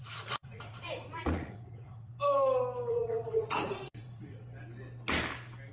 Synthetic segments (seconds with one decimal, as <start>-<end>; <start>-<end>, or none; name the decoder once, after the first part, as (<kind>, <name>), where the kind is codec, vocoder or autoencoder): 0.0-2.1 (vocoder, Vocos); 2.9-4.4